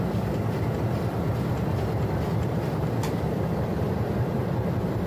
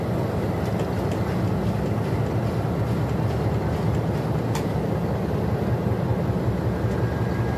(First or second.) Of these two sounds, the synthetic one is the first